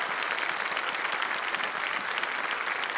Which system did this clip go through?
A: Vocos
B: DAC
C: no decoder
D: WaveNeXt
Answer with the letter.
C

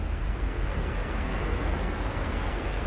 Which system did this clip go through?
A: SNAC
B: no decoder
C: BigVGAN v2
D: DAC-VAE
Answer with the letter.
A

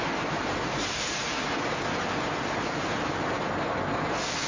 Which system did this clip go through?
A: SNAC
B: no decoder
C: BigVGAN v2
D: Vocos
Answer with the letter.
C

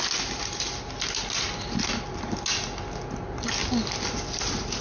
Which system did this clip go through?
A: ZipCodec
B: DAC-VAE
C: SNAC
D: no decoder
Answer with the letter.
D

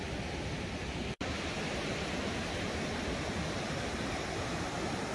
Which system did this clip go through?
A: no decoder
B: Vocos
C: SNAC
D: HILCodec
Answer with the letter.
A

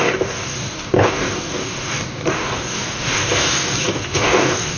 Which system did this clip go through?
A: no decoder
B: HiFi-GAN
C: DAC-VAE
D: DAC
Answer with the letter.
D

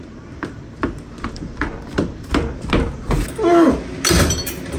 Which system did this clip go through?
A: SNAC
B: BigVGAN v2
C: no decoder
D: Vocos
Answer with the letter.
B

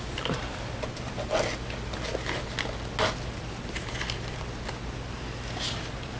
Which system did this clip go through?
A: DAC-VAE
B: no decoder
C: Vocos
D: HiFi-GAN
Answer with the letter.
B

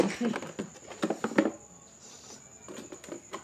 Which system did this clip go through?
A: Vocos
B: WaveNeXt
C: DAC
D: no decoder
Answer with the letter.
D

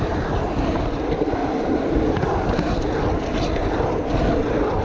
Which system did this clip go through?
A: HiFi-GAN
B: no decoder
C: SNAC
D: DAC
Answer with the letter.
B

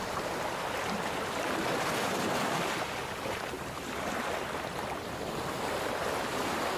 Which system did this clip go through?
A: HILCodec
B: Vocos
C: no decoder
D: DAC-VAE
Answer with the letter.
C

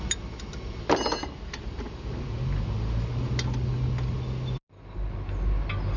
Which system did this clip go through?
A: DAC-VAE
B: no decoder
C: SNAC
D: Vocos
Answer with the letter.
B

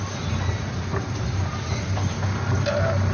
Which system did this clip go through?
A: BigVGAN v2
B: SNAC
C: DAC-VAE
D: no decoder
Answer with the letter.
D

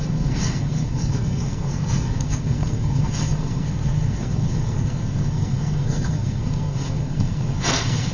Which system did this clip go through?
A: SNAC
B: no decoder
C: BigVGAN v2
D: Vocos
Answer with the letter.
A